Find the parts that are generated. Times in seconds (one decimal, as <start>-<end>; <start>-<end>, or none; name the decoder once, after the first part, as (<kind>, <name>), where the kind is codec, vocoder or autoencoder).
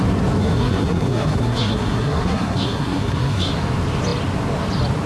0.4-3.5 (codec, SNAC)